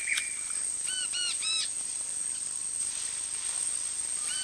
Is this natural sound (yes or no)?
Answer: yes